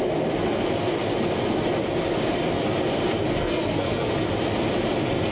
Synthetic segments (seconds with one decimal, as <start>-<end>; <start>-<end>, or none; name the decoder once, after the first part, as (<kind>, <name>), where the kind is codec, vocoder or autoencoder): 3.4-4.1 (codec, SNAC)